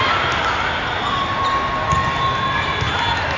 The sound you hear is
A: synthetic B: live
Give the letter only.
B